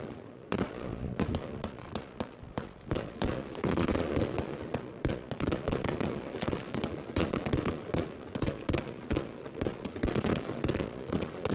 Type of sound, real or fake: fake